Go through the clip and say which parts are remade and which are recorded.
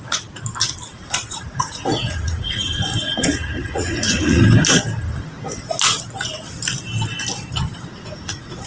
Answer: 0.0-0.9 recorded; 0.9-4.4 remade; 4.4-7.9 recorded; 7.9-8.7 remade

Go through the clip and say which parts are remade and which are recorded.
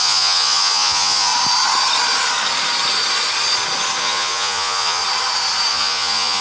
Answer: 0.0-1.3 remade; 1.3-4.0 recorded; 4.0-5.0 remade; 5.0-5.7 recorded; 5.7-6.4 remade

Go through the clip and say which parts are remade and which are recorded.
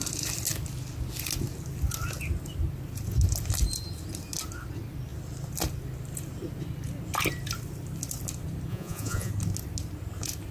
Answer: 0.0-8.7 recorded; 8.7-9.3 remade; 9.3-10.5 recorded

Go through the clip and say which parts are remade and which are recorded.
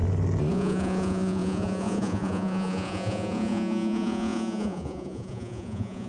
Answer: 0.0-0.5 recorded; 0.5-6.1 remade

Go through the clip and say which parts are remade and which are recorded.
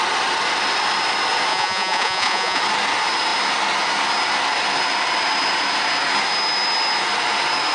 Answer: 0.0-1.5 recorded; 1.5-2.6 remade; 2.6-7.7 recorded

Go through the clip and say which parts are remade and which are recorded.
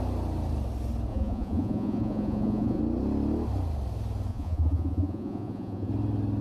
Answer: 0.0-1.1 recorded; 1.1-2.8 remade; 2.8-4.3 recorded; 4.3-5.9 remade; 5.9-6.4 recorded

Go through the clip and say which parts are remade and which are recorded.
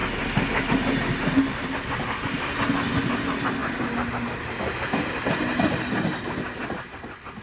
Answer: 0.0-7.4 recorded